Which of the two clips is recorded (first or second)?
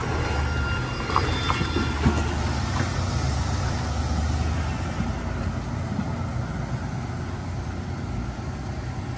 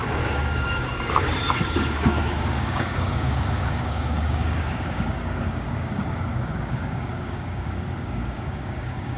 first